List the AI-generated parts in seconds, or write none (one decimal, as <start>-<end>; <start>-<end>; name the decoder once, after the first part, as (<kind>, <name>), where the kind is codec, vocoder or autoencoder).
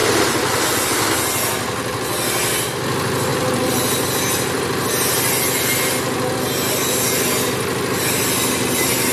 none